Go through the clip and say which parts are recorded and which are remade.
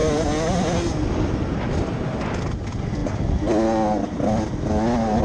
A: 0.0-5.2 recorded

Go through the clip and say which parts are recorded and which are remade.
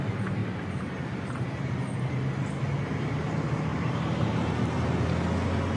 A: 0.0-0.4 recorded; 0.4-1.7 remade; 1.7-3.7 recorded; 3.7-4.5 remade; 4.5-5.8 recorded